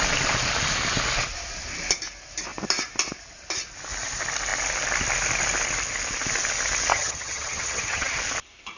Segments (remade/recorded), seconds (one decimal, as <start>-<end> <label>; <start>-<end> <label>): 0.0-6.9 recorded; 6.9-8.2 remade; 8.2-8.8 recorded